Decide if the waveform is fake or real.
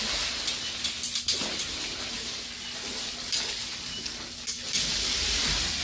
real